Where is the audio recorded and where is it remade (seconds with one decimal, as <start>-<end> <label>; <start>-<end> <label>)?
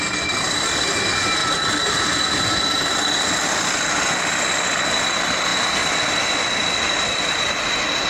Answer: 0.0-8.1 recorded